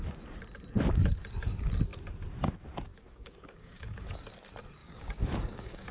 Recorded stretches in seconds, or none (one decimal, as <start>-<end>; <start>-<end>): 0.0-2.9; 4.2-4.8